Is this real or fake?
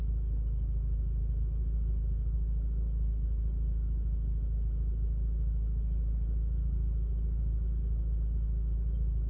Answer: real